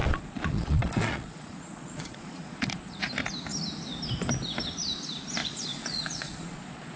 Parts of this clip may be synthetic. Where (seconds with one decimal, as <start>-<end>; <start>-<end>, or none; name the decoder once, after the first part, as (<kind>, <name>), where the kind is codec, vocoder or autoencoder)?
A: 0.0-3.1 (vocoder, Vocos); 5.4-7.0